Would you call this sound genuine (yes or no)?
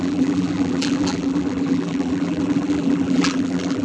no